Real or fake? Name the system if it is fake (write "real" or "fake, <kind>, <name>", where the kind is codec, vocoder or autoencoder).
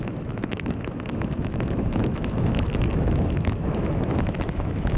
fake, autoencoder, DAC-VAE